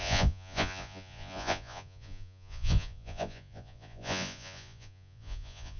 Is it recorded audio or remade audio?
remade